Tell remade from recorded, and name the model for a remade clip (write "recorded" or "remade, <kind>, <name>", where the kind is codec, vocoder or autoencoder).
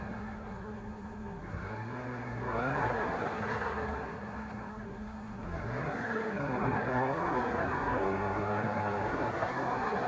remade, codec, SNAC